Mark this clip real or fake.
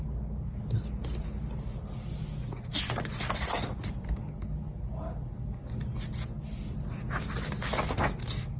real